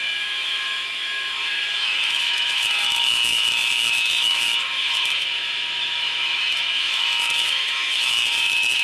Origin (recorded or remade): remade